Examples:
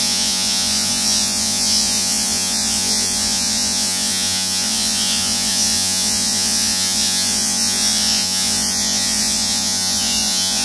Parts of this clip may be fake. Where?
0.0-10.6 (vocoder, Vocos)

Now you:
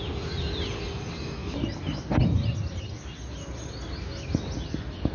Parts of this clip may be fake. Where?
none

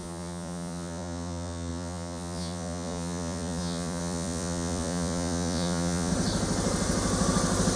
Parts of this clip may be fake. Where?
0.0-6.1 (vocoder, Vocos)

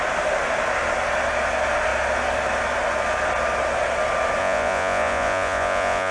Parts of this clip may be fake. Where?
4.4-6.1 (vocoder, Vocos)

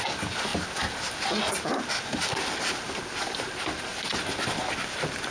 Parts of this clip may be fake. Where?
none

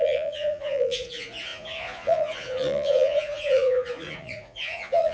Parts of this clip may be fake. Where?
0.0-5.1 (vocoder, Vocos)

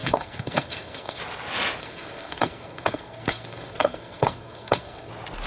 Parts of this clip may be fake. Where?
0.0-1.2 (codec, SNAC); 1.8-5.1

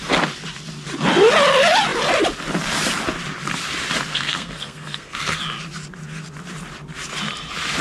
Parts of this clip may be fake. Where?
4.1-5.4 (codec, SNAC)